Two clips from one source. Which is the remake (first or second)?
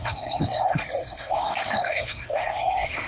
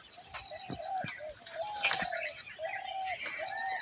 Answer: first